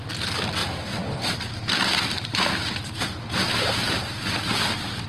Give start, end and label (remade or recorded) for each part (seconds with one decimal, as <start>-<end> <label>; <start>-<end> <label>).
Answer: 0.0-0.6 recorded; 0.6-3.2 remade; 3.2-5.1 recorded